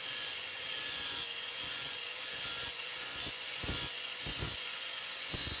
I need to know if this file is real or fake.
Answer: fake